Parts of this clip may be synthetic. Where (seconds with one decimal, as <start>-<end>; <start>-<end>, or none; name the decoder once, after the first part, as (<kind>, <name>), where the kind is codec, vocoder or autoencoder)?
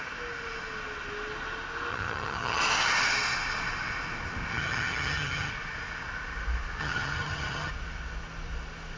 1.9-2.6 (vocoder, HiFi-GAN); 4.5-5.5; 6.8-7.7